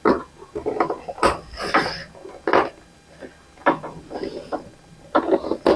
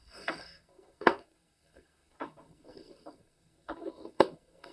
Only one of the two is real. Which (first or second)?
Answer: first